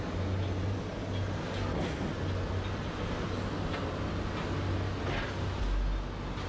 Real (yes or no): yes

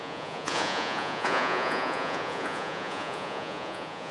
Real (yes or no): no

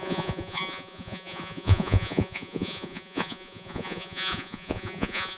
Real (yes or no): no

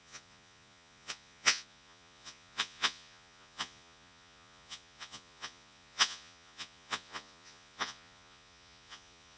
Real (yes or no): no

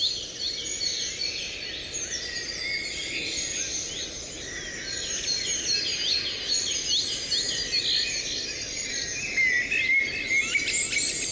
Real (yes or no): yes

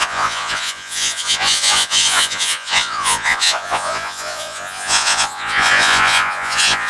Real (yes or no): no